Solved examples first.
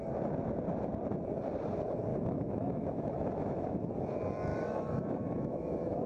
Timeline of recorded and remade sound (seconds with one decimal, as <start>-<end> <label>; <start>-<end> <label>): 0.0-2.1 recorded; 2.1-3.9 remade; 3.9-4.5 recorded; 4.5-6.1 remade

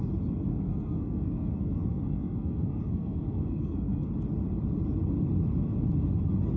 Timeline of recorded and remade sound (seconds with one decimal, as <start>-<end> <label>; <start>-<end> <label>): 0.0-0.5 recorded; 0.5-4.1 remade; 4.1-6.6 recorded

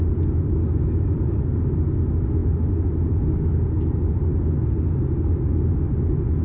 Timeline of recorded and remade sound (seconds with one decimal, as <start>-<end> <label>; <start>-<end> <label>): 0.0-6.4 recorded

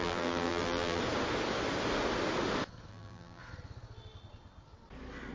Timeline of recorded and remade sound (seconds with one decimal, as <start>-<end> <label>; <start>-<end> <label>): 0.0-1.0 remade; 1.0-2.9 recorded; 2.9-3.4 remade; 3.4-5.3 recorded

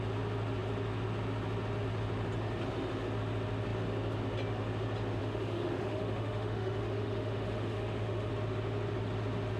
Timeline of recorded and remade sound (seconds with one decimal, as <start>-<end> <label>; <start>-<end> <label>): 0.0-5.2 recorded; 5.2-8.3 remade; 8.3-9.6 recorded

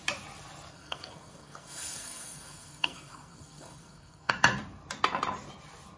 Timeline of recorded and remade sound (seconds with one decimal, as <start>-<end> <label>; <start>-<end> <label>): 0.0-0.7 recorded; 0.7-4.3 remade; 4.3-6.0 recorded

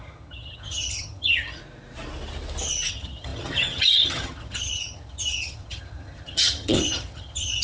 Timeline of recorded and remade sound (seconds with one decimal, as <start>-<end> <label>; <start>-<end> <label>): 0.0-1.6 remade; 1.6-2.9 recorded; 2.9-7.6 remade